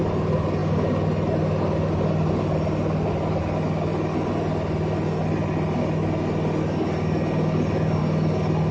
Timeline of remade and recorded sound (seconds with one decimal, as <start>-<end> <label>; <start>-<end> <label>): 0.0-8.7 recorded